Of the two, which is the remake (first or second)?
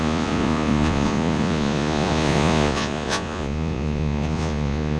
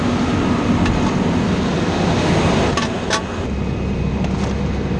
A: first